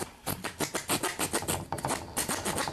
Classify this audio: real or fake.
real